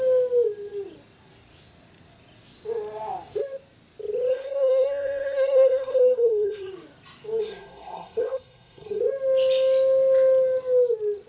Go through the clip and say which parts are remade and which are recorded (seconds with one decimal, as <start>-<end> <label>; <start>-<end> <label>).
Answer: 0.0-4.3 recorded; 4.3-6.7 remade; 6.7-7.4 recorded; 7.4-9.0 remade; 9.0-11.3 recorded

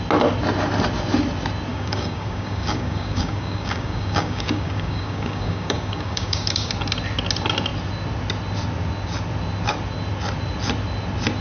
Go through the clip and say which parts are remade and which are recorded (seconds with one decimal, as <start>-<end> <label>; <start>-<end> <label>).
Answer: 0.0-1.7 recorded; 1.7-6.7 remade; 6.7-11.4 recorded